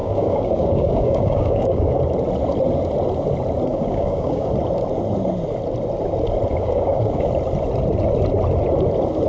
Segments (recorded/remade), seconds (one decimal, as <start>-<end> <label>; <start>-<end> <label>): 0.0-1.9 remade; 1.9-3.7 recorded; 3.7-4.5 remade; 4.5-6.5 recorded; 6.5-7.3 remade; 7.3-9.3 recorded